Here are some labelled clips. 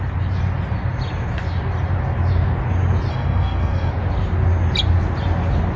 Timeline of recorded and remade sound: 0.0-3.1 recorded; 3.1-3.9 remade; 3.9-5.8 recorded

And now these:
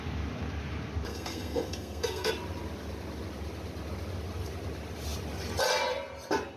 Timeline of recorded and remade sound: 0.0-1.1 recorded; 1.1-2.3 remade; 2.3-6.6 recorded

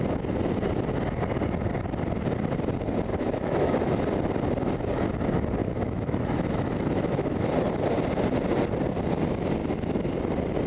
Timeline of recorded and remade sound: 0.0-3.1 recorded; 3.1-4.0 remade; 4.0-5.6 recorded; 5.6-7.5 remade; 7.5-9.6 recorded; 9.6-10.1 remade; 10.1-10.7 recorded

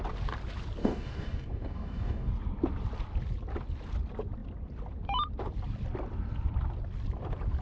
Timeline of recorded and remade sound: 0.0-0.8 recorded; 0.8-2.3 remade; 2.3-7.6 recorded